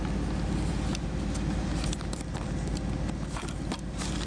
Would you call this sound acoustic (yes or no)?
yes